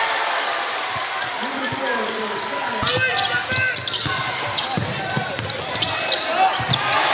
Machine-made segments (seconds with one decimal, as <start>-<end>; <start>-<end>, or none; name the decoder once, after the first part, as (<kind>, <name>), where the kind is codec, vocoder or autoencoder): none